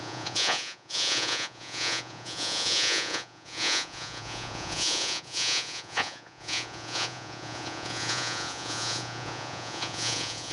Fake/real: fake